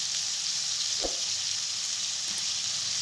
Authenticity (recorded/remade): recorded